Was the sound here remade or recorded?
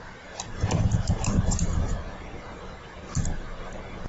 recorded